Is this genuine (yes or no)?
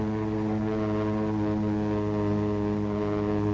yes